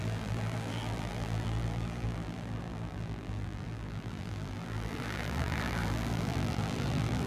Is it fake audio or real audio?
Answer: fake